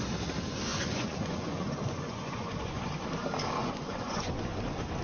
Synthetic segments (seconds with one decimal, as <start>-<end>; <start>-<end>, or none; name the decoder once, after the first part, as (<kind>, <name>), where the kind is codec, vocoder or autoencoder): 0.7-2.8 (vocoder, Vocos); 3.6-4.3